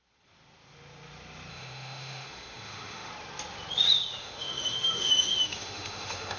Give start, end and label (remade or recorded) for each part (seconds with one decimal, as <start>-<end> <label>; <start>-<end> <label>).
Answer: 0.0-1.5 recorded; 1.5-3.1 remade; 3.1-4.2 recorded; 4.2-6.4 remade